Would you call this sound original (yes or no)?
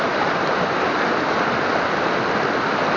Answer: yes